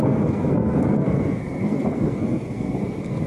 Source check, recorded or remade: remade